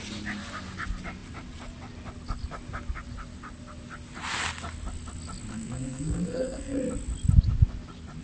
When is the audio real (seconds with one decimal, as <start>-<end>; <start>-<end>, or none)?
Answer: 0.0-5.5; 6.8-8.2